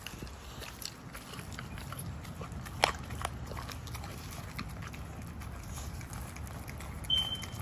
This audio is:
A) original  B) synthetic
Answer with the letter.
A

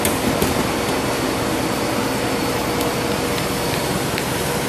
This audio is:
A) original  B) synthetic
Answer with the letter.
A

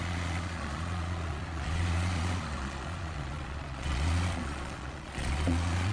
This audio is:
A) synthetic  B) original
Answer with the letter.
A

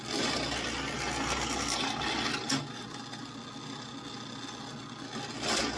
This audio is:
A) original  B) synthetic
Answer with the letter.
A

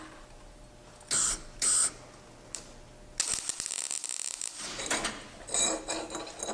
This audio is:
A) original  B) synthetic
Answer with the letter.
A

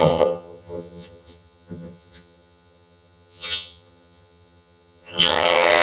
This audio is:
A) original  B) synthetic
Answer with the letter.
B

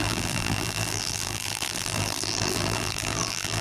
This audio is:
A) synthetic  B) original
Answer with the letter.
A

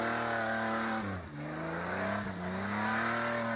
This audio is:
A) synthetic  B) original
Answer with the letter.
B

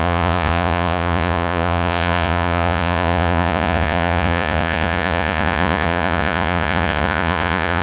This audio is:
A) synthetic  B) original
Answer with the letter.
A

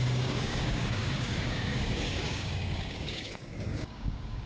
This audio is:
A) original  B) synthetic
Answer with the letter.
B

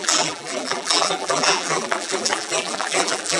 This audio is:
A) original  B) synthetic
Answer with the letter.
B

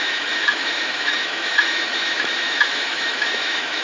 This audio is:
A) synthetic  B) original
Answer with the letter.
A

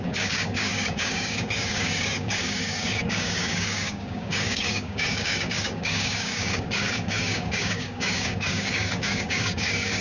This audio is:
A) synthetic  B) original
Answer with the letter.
A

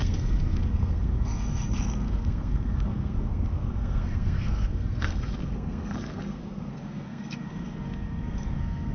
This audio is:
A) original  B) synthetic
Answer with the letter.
B